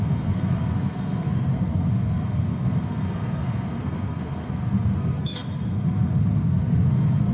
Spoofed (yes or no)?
yes